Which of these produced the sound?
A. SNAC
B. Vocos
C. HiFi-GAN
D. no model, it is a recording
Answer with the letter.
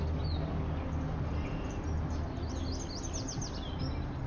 D